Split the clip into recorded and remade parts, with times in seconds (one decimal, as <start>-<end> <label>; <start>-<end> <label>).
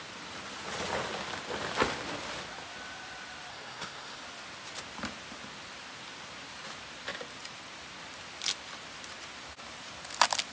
0.0-3.5 recorded; 3.5-4.2 remade; 4.2-10.5 recorded